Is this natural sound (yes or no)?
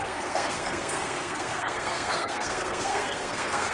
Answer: no